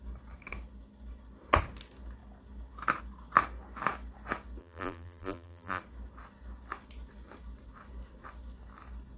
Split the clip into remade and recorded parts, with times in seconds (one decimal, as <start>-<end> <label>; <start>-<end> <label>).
0.0-4.6 recorded; 4.6-5.8 remade; 5.8-9.2 recorded